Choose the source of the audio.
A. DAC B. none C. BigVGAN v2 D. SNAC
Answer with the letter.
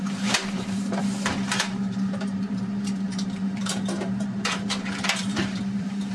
C